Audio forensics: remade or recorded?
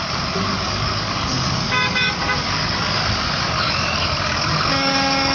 remade